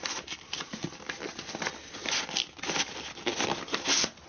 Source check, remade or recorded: recorded